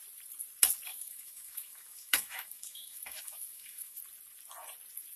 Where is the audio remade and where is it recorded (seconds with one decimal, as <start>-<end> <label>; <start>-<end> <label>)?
0.0-0.9 recorded; 0.9-4.0 remade; 4.0-5.2 recorded